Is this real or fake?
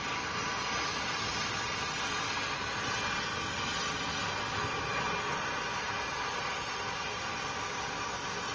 real